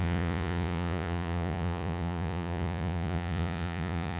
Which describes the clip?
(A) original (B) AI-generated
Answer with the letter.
B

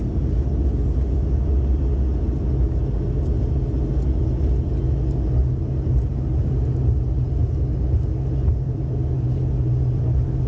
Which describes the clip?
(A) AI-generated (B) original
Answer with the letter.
B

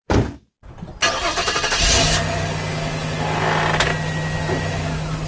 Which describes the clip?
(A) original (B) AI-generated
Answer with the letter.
A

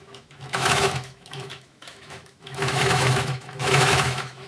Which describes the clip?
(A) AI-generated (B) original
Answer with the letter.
A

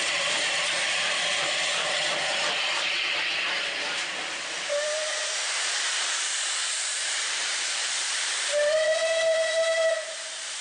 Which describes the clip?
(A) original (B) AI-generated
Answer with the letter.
B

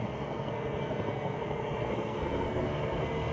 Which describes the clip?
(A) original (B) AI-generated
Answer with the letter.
B